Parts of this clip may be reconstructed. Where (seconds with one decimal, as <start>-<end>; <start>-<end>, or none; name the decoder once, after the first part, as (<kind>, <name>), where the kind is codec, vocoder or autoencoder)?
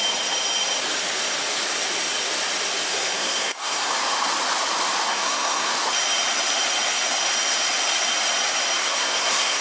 2.9-3.9 (codec, SNAC); 5.1-5.7; 8.8-9.6